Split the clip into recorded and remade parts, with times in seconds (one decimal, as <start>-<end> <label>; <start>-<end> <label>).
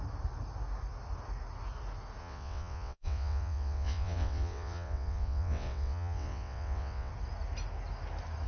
0.0-2.2 recorded; 2.2-7.1 remade; 7.1-8.5 recorded